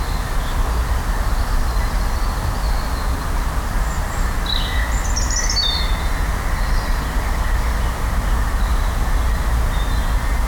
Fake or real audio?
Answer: real